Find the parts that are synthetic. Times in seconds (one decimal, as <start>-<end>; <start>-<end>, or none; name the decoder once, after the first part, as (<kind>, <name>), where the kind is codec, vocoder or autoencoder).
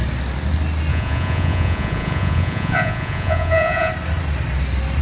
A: 0.9-3.9 (vocoder, Vocos)